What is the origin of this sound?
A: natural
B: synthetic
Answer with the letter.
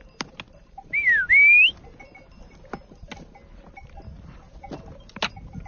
A